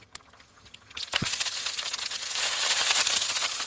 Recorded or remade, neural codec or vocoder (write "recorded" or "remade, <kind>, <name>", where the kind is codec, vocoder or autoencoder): remade, vocoder, HiFi-GAN